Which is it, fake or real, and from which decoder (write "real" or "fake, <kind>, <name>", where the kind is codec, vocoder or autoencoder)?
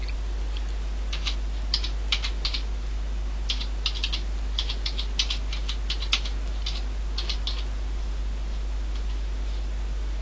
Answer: real